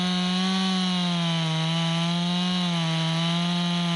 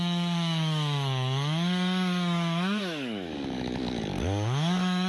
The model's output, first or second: second